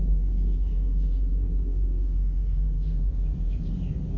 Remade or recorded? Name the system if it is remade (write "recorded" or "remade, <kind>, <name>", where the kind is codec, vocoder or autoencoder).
remade, codec, SNAC